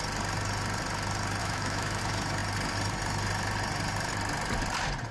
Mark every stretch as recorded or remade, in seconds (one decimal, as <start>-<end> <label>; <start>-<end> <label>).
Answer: 0.0-1.4 recorded; 1.4-2.0 remade; 2.0-5.1 recorded